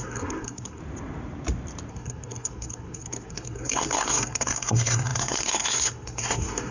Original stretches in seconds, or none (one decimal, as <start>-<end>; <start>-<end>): 0.8-1.9